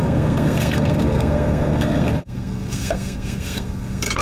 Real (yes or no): no